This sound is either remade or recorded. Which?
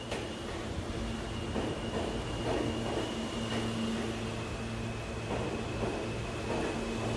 recorded